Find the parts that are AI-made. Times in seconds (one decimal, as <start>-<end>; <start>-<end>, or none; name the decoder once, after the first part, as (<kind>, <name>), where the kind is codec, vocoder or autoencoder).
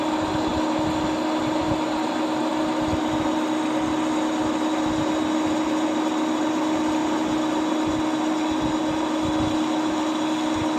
none